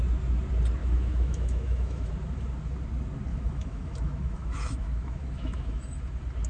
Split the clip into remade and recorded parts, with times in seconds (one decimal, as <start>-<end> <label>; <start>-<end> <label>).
0.0-0.8 recorded; 0.8-2.1 remade; 2.1-3.3 recorded; 3.3-6.0 remade; 6.0-6.5 recorded